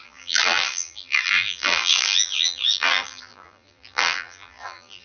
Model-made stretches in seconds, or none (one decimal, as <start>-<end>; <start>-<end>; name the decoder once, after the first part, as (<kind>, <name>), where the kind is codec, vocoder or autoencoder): 0.0-5.0 (vocoder, BigVGAN v2)

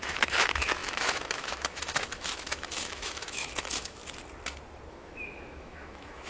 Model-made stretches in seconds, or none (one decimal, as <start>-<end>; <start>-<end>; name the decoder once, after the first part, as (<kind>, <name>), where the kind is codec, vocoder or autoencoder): 0.0-4.0 (autoencoder, DAC-VAE); 4.9-6.3

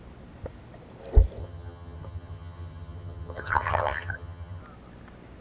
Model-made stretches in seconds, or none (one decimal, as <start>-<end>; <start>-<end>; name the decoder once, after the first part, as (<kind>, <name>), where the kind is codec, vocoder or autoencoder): 1.4-4.6 (vocoder, HiFi-GAN)

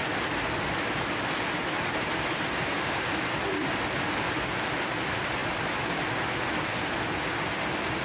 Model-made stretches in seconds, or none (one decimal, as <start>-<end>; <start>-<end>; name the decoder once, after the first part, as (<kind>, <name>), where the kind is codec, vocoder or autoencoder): none

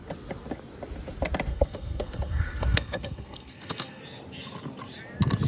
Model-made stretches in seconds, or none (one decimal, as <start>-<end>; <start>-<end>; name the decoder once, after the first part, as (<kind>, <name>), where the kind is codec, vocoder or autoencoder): 1.5-4.0 (codec, SNAC)

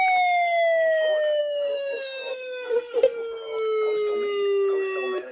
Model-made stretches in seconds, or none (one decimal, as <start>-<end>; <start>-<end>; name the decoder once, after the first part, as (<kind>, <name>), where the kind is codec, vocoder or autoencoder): 1.4-3.2 (codec, SNAC)

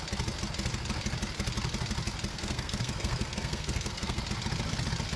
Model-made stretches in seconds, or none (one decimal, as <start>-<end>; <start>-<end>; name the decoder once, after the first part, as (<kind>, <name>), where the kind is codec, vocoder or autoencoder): 2.3-4.2 (codec, SNAC)

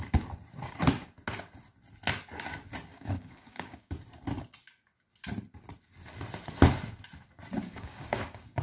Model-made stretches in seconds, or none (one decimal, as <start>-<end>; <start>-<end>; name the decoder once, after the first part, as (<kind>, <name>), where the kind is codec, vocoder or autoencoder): 2.9-3.9 (codec, DAC); 7.6-8.6